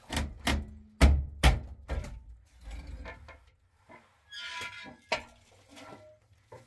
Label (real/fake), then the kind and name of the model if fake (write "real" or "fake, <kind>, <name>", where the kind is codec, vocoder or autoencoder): real